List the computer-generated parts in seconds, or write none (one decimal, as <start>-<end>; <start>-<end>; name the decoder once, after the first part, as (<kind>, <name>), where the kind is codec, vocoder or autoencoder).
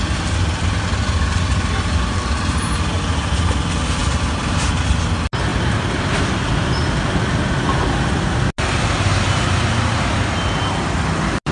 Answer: none